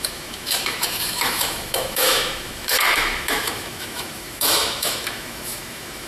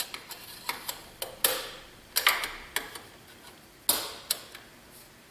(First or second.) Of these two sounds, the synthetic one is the first